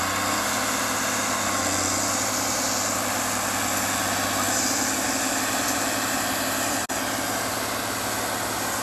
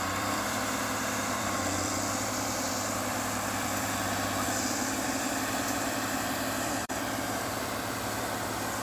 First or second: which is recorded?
first